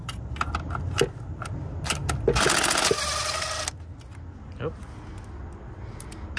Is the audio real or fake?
real